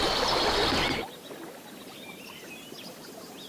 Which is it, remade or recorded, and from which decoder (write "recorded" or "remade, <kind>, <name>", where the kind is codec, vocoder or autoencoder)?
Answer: recorded